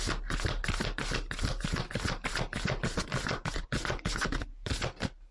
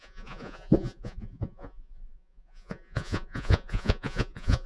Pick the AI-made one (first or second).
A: second